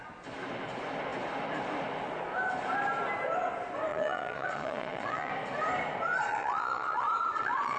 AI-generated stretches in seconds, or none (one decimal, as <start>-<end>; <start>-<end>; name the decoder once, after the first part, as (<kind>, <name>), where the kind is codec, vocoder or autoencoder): 3.9-5.3 (vocoder, Vocos); 6.3-7.8